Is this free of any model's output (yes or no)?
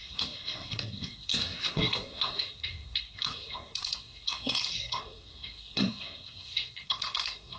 no